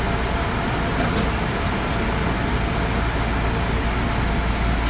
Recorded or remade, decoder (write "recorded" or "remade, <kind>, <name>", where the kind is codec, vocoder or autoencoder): recorded